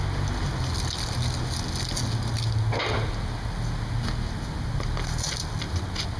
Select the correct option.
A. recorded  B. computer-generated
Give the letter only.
A